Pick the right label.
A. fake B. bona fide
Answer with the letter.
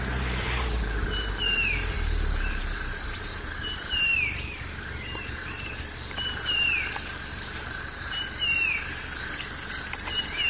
A